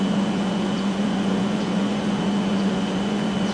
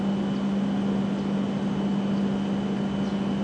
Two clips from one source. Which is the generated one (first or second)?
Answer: first